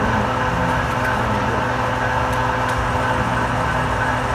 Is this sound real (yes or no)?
yes